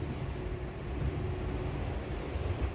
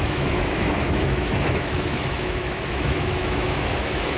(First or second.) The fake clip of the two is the second